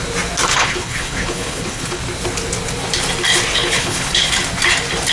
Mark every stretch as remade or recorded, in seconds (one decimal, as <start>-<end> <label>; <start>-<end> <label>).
0.0-0.5 recorded; 0.5-2.0 remade; 2.0-3.5 recorded; 3.5-4.3 remade; 4.3-5.1 recorded